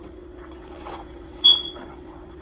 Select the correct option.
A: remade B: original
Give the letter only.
A